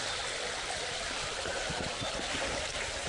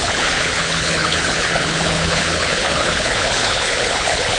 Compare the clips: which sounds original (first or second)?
first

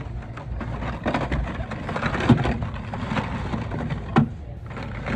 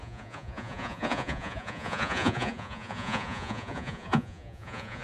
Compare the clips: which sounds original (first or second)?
first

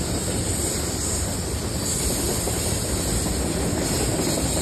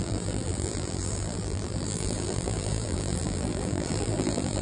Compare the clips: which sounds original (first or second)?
first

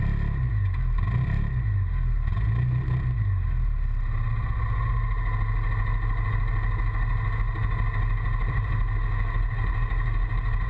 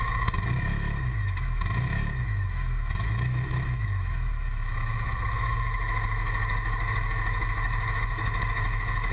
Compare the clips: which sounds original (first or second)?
first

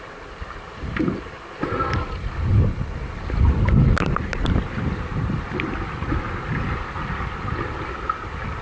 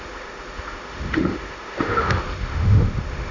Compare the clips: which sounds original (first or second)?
first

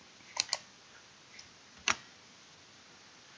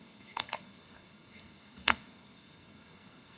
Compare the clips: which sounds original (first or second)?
first